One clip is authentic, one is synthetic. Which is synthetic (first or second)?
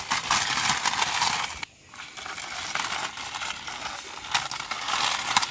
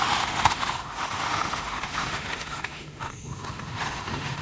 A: second